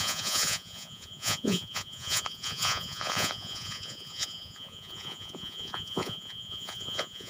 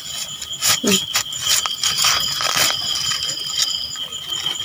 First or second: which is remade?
first